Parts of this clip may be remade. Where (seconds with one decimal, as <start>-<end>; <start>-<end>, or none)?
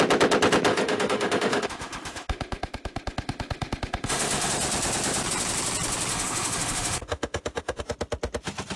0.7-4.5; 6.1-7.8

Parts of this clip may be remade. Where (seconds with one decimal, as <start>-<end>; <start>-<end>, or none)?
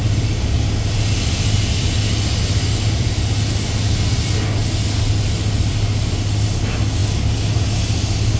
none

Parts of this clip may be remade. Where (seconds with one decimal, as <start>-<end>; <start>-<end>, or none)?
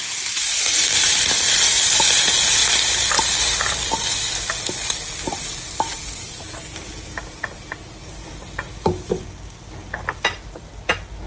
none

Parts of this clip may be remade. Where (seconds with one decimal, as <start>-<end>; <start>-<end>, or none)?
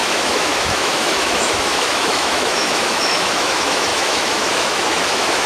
0.0-5.5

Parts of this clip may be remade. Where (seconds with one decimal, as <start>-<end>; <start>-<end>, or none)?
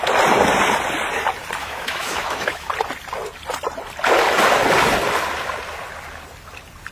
1.6-2.7